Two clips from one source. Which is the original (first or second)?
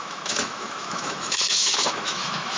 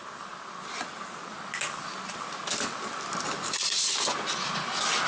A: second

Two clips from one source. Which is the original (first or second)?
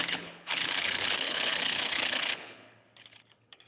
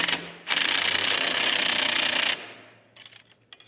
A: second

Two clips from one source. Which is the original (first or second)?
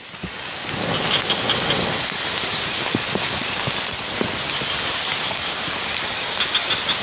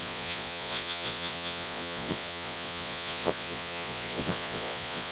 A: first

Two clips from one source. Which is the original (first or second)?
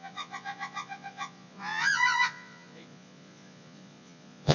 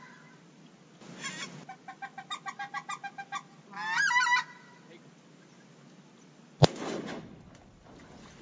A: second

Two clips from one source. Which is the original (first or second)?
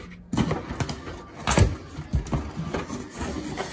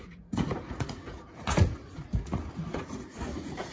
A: first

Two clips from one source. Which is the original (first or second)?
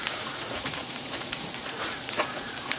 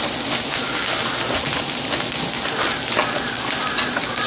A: second